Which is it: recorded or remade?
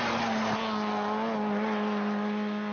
recorded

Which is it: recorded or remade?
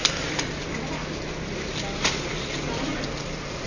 recorded